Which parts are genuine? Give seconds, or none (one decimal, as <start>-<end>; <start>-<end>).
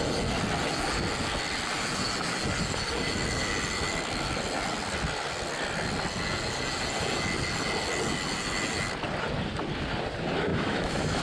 0.0-10.5